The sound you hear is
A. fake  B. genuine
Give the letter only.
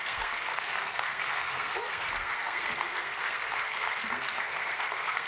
A